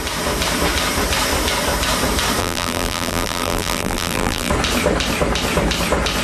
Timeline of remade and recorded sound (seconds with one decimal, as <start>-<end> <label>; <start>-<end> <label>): 0.0-2.4 recorded; 2.4-4.5 remade; 4.5-6.2 recorded